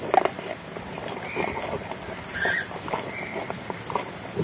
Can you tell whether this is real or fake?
real